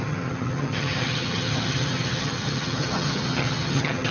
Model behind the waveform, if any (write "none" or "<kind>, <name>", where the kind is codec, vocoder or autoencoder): vocoder, HiFi-GAN